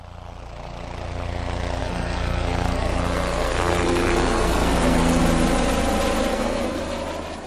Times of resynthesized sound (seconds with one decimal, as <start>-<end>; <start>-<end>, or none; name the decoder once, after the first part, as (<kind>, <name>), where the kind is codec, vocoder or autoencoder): 1.8-5.2 (codec, SNAC); 6.3-6.8